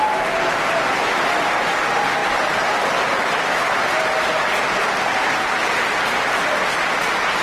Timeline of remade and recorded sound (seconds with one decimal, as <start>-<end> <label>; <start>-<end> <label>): 0.0-7.4 recorded